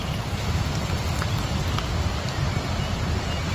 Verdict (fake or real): real